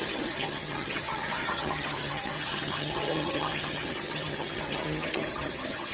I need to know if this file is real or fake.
fake